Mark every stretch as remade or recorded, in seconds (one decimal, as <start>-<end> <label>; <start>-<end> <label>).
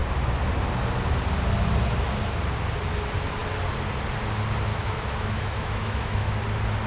0.0-4.7 recorded; 4.7-6.3 remade; 6.3-6.9 recorded